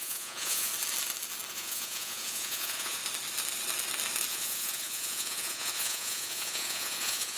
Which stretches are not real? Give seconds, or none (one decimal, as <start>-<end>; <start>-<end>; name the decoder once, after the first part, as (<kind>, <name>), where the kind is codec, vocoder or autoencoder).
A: 0.0-0.7 (vocoder, Vocos); 1.5-3.0; 4.3-7.4